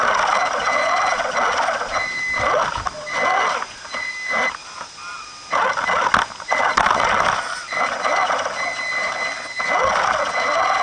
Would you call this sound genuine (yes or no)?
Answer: yes